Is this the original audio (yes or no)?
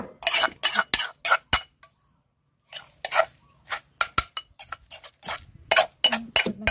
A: yes